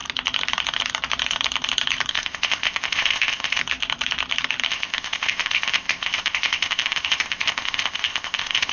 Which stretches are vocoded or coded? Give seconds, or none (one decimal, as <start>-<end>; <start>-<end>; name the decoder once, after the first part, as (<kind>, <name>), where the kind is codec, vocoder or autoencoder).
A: 2.1-3.6 (codec, ZipCodec); 4.7-8.7